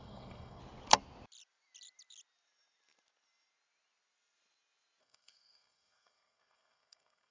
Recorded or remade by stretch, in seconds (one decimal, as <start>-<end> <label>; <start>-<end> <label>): 0.0-0.6 remade; 0.6-5.0 recorded; 5.0-7.3 remade